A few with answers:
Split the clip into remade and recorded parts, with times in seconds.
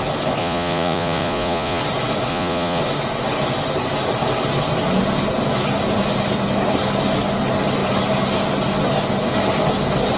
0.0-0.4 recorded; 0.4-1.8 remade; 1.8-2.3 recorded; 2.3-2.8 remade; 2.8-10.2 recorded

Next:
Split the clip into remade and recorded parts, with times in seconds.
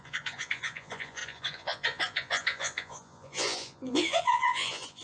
0.0-5.0 remade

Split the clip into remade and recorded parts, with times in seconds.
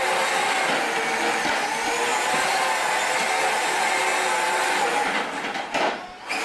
0.0-6.4 recorded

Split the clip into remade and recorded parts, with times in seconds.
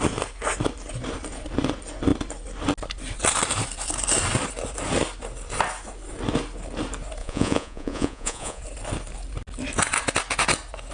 0.0-7.2 recorded; 7.2-8.6 remade; 8.6-10.9 recorded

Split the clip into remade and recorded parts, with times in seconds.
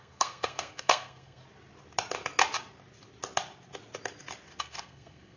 0.0-1.4 remade; 1.4-4.6 recorded; 4.6-5.4 remade